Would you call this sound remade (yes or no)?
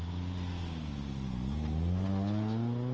no